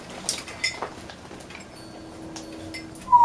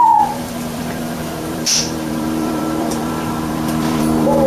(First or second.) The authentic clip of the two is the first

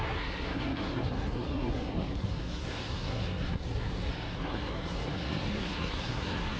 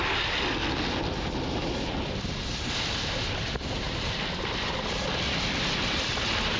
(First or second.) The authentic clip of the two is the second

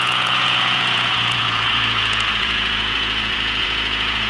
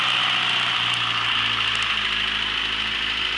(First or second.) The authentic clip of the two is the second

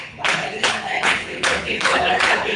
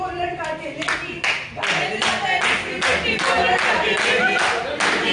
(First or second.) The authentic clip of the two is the second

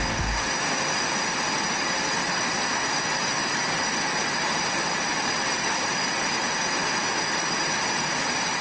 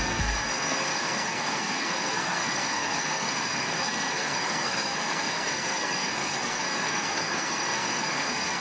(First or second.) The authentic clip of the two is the first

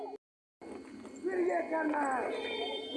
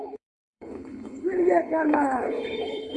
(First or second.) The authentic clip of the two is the first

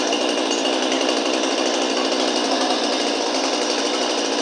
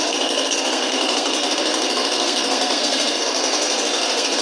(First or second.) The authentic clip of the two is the first